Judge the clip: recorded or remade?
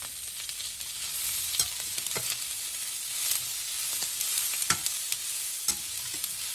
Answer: recorded